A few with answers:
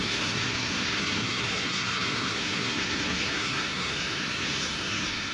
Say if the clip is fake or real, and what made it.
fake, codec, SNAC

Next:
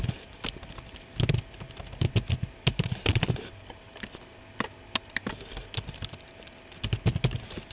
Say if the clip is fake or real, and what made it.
real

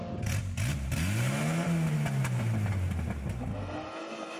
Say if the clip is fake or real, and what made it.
real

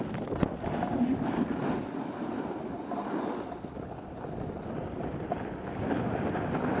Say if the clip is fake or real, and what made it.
real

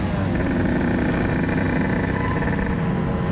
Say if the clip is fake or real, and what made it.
real